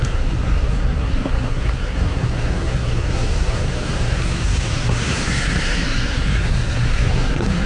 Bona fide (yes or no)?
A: no